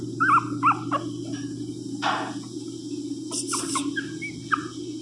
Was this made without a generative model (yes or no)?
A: yes